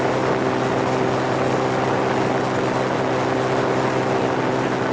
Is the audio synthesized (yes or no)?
no